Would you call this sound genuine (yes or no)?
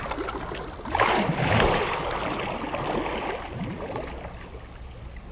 yes